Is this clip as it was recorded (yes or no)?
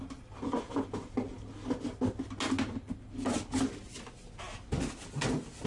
yes